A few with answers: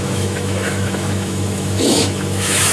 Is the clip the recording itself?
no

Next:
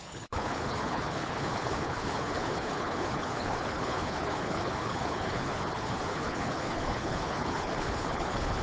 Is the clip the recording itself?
no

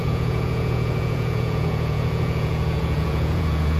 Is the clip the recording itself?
no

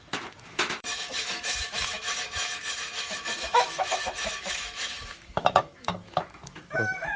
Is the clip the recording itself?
no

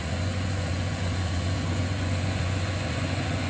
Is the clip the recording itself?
no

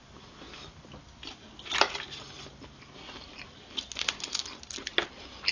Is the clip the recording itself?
yes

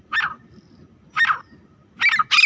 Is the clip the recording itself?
no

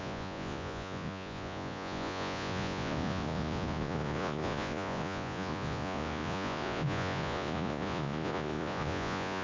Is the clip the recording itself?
no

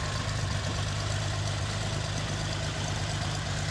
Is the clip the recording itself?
yes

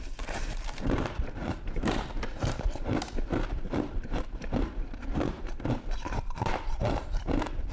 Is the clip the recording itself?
no